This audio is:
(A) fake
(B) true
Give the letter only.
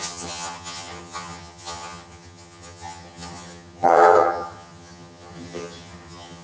A